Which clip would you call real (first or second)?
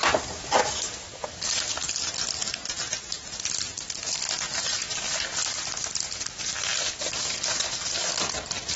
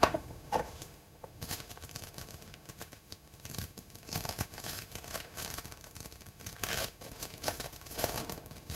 first